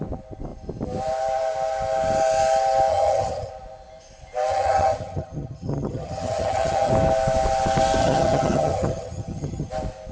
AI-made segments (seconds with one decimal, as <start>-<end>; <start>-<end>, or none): 2.9-3.5; 4.5-6.9; 8.0-9.7